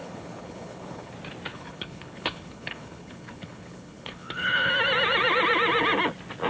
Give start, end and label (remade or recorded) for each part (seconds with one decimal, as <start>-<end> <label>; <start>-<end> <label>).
0.0-1.1 remade; 1.1-1.5 recorded; 1.5-4.7 remade; 4.7-6.5 recorded